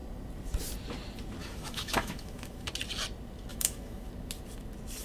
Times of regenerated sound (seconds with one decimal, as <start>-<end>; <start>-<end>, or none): 1.4-2.7; 3.5-4.1